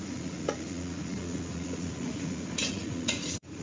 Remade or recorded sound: remade